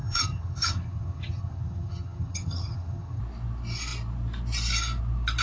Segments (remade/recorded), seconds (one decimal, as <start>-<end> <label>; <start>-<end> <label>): 0.0-3.2 remade; 3.2-5.4 recorded